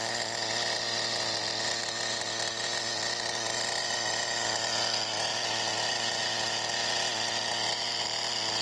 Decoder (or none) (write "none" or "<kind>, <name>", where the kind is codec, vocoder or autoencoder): none